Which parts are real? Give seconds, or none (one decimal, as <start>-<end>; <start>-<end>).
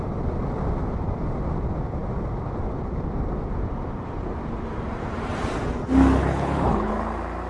0.0-6.2; 6.9-7.5